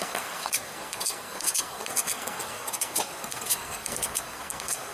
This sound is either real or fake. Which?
fake